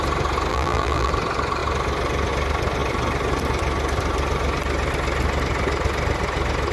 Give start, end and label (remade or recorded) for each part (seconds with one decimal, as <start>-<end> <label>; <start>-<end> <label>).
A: 0.0-0.5 recorded; 0.5-1.1 remade; 1.1-6.7 recorded